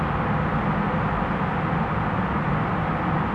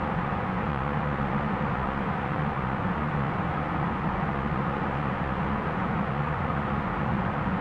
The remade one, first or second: second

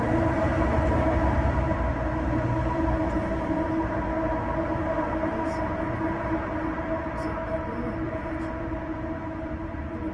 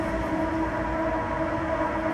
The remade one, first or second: first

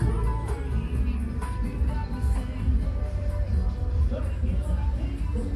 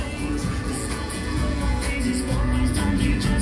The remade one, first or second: second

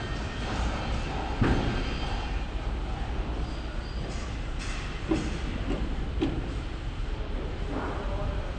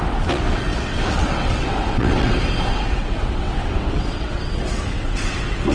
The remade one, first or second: second